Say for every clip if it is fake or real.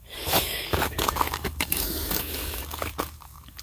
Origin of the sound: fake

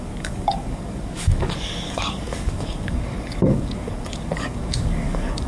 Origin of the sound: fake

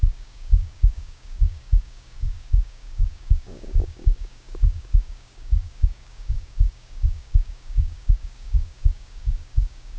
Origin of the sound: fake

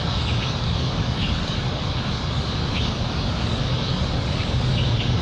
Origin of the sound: fake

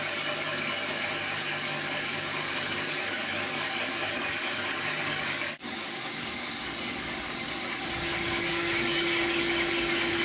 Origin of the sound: fake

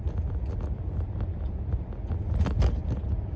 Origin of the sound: real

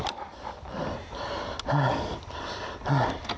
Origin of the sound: real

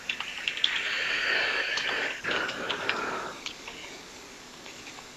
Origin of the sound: fake